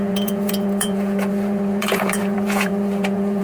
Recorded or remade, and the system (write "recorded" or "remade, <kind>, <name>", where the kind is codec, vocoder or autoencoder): remade, vocoder, Vocos